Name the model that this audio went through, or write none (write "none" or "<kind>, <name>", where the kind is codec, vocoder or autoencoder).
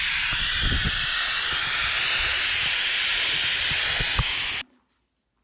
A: none